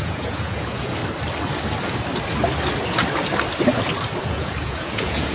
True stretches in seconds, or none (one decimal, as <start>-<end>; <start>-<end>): 1.0-4.2